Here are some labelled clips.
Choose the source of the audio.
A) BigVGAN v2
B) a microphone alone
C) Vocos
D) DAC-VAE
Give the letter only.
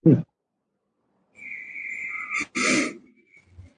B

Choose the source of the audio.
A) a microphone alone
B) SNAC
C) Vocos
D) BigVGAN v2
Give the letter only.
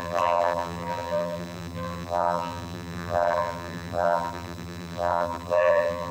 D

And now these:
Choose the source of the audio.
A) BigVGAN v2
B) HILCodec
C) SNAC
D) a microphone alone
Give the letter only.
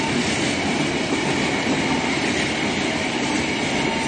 D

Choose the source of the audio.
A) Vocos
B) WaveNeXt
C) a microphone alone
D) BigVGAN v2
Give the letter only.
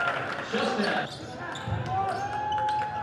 C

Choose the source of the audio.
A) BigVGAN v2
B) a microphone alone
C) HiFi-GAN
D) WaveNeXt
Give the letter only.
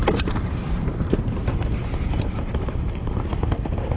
A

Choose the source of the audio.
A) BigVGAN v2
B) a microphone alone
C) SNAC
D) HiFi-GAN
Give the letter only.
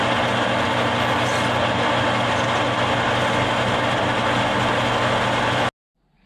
B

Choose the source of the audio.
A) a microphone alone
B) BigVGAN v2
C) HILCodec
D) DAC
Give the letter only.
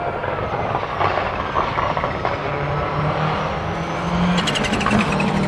A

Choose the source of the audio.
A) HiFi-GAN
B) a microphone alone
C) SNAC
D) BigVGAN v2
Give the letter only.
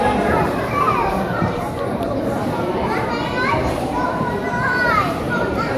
D